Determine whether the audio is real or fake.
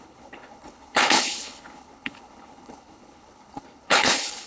fake